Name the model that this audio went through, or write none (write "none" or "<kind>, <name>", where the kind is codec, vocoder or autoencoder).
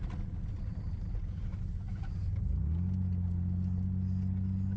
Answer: none